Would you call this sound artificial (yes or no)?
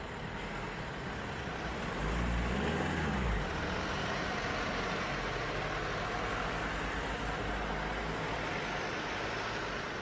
no